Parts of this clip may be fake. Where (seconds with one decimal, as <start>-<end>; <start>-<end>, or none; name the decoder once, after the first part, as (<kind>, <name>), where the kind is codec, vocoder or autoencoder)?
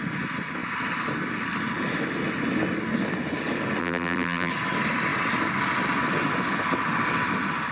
3.8-4.5 (vocoder, BigVGAN v2)